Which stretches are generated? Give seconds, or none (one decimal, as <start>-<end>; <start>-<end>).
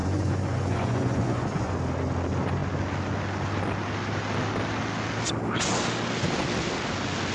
0.0-1.7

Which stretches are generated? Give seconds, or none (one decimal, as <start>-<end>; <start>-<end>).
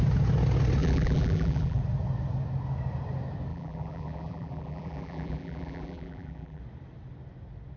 0.8-1.8; 3.5-6.6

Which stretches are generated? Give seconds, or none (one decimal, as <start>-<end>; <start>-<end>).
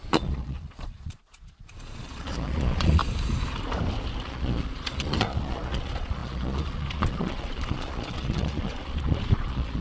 0.0-3.0; 4.2-9.8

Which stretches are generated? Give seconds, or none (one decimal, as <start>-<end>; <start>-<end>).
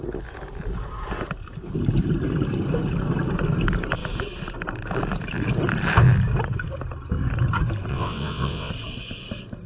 7.9-8.7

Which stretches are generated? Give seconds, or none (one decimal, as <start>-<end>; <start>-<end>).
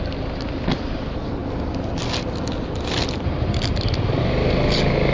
none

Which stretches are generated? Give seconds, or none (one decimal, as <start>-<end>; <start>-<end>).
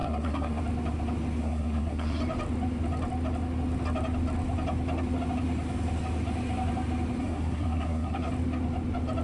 0.0-0.6; 1.4-2.2; 7.2-8.3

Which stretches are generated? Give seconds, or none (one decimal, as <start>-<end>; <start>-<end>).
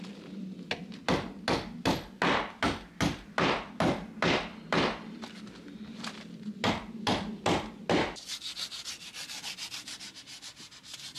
none